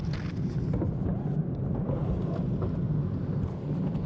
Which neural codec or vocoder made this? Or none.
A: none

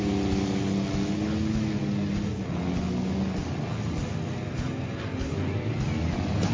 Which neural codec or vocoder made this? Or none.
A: none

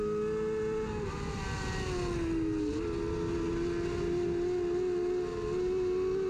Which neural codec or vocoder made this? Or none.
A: none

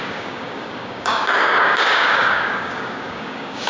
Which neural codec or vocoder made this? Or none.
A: codec, DAC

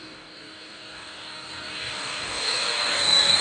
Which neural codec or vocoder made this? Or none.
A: codec, DAC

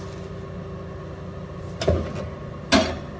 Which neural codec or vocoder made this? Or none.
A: none